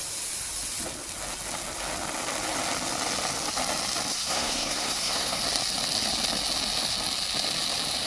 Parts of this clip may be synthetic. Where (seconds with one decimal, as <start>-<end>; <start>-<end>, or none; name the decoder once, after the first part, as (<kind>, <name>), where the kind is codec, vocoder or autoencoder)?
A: 4.1-5.4 (codec, SNAC)